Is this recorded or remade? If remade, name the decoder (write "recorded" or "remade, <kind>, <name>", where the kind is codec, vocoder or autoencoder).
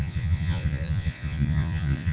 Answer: remade, vocoder, Vocos